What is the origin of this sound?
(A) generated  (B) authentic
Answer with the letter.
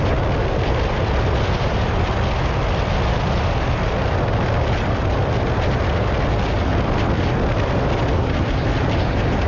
B